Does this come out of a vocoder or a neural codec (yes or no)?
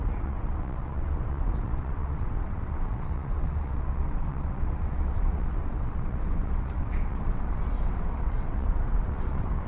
yes